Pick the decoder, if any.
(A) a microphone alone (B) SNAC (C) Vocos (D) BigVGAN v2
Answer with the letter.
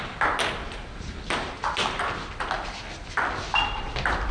A